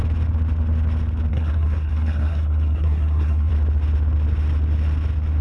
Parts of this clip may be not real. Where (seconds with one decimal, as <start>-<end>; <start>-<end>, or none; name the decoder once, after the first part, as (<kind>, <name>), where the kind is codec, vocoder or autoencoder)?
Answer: 1.3-3.5 (codec, SNAC)